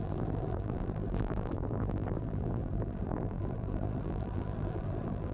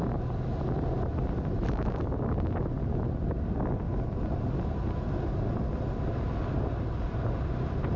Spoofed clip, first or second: first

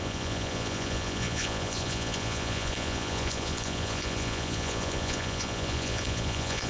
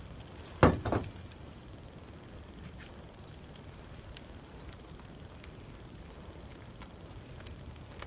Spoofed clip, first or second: first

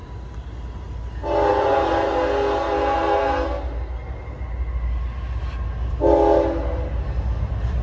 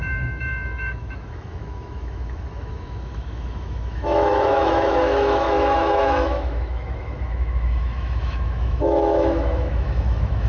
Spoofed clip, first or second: second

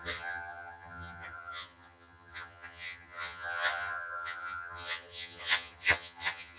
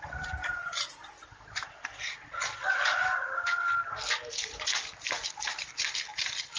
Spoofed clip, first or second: first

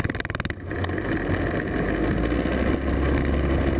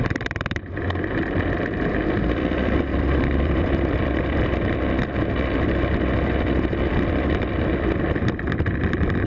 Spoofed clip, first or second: second